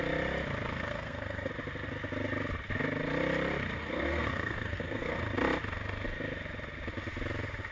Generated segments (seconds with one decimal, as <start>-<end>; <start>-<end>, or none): 0.7-1.5; 3.8-5.2